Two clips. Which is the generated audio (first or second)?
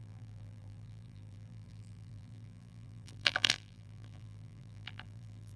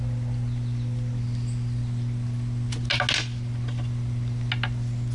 first